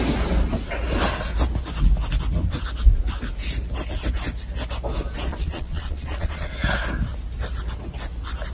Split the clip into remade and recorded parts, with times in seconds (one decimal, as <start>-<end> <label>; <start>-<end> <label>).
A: 0.0-5.3 recorded; 5.3-6.5 remade; 6.5-8.5 recorded